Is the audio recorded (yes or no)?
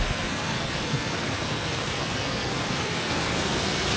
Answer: no